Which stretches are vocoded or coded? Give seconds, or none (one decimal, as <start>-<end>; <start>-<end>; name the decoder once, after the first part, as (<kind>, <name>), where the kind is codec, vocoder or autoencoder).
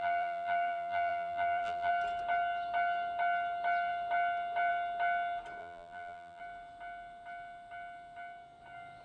0.0-1.9 (vocoder, BigVGAN v2); 5.6-6.4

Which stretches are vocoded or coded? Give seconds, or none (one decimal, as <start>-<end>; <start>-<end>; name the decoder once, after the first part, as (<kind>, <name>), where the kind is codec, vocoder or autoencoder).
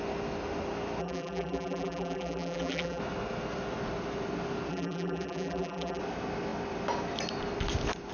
1.0-3.0 (vocoder, BigVGAN v2); 4.7-6.0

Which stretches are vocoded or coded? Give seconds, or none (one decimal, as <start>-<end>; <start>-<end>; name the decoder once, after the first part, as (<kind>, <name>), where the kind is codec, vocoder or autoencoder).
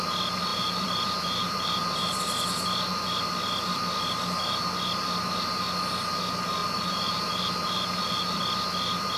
0.5-2.2 (vocoder, BigVGAN v2); 6.6-8.4